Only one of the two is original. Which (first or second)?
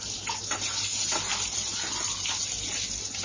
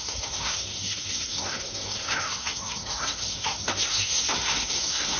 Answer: first